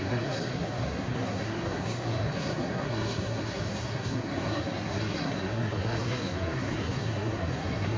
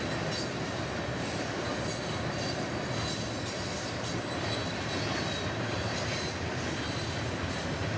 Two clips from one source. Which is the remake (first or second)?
first